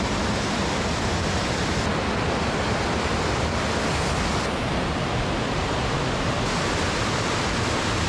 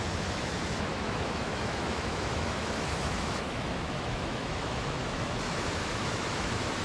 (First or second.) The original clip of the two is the first